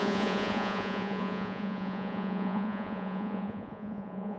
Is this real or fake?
fake